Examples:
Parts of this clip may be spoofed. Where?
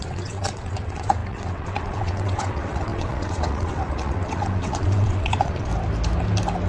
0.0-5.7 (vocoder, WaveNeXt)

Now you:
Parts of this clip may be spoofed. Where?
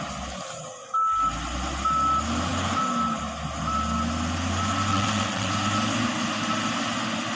4.9-5.5 (vocoder, WaveNeXt)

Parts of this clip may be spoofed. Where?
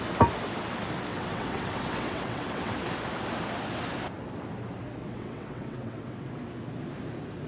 1.1-2.7 (vocoder, WaveNeXt); 5.0-6.3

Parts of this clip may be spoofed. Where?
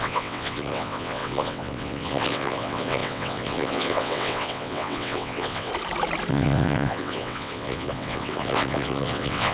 0.0-5.7 (vocoder, WaveNeXt); 6.3-9.5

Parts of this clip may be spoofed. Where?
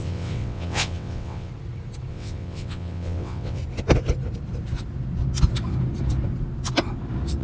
0.0-1.5 (vocoder, WaveNeXt); 2.1-3.6